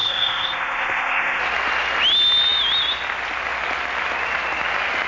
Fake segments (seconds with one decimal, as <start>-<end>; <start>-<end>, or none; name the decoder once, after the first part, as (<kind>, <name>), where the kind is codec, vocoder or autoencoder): 0.0-1.4 (codec, ZipCodec)

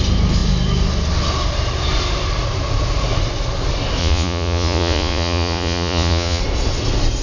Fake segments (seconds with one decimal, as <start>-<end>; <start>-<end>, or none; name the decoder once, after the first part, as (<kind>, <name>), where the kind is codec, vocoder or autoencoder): 4.0-6.4 (vocoder, Vocos)

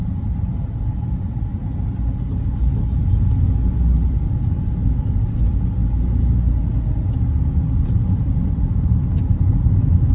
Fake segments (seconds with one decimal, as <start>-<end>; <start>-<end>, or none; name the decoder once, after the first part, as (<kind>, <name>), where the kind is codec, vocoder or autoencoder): none

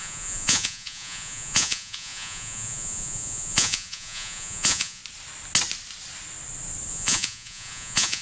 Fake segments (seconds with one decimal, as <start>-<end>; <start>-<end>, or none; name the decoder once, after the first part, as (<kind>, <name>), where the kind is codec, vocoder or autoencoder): 0.0-5.0 (vocoder, Vocos); 6.9-8.2

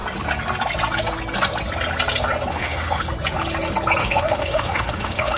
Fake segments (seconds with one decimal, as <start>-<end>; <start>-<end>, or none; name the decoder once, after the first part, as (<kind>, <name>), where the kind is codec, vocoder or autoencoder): 2.5-3.1 (autoencoder, DAC-VAE); 4.0-5.4

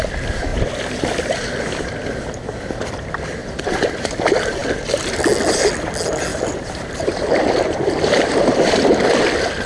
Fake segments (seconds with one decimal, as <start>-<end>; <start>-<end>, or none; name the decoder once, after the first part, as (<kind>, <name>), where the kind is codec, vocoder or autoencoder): 3.4-4.1 (vocoder, BigVGAN v2); 6.3-8.7

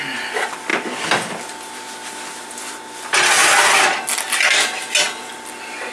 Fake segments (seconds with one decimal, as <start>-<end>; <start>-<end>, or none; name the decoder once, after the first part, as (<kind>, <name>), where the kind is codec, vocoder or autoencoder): none

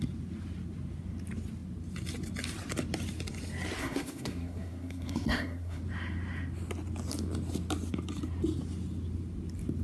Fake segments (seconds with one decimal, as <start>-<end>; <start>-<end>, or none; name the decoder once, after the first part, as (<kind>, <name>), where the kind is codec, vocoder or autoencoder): 3.8-5.8 (codec, SNAC)